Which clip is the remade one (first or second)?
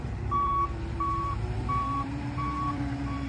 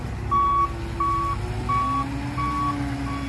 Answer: first